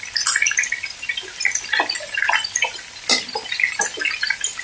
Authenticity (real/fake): real